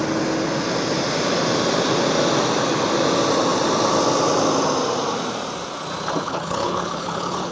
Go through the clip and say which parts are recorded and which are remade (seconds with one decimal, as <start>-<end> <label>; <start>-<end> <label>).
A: 0.0-6.2 recorded; 6.2-7.5 remade

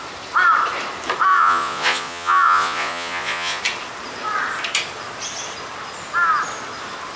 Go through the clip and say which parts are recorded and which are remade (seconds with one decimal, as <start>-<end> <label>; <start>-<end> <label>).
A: 0.0-1.3 recorded; 1.3-3.6 remade; 3.6-7.2 recorded

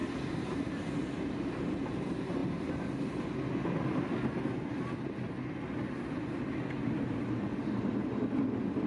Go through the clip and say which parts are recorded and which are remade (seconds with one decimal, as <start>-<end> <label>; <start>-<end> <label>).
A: 0.0-1.5 remade; 1.5-8.9 recorded

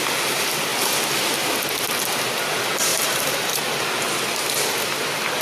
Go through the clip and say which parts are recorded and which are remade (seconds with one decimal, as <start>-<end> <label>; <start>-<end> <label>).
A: 0.0-2.9 recorded; 2.9-3.6 remade; 3.6-5.4 recorded

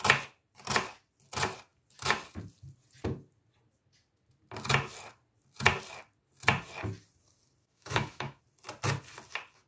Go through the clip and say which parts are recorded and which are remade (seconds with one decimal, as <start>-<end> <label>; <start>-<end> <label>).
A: 0.0-7.6 recorded; 7.6-8.4 remade; 8.4-9.7 recorded